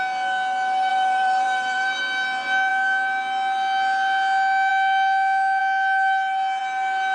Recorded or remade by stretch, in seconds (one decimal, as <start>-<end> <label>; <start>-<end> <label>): 0.0-0.9 recorded; 0.9-2.0 remade; 2.0-7.1 recorded

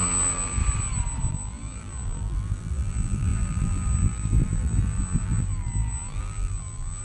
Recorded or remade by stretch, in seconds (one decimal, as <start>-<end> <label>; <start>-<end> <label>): 0.0-0.6 remade; 0.6-1.3 recorded; 1.3-7.0 remade

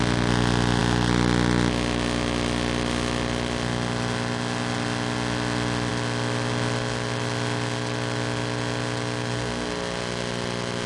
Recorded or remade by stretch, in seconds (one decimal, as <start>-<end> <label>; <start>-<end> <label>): 0.0-10.9 recorded

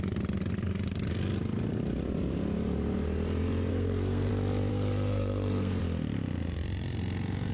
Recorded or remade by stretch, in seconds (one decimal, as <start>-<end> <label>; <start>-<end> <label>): 0.0-3.7 recorded; 3.7-4.3 remade; 4.3-4.7 recorded; 4.7-5.8 remade; 5.8-7.5 recorded

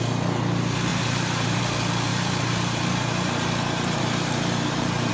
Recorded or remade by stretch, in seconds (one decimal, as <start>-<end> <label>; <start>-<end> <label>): 0.0-0.9 recorded; 0.9-1.6 remade; 1.6-2.1 recorded; 2.1-5.1 remade

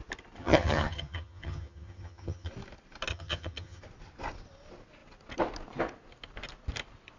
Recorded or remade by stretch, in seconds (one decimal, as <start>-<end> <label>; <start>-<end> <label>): 0.0-0.4 recorded; 0.4-2.5 remade; 2.5-3.1 recorded; 3.1-3.8 remade; 3.8-7.2 recorded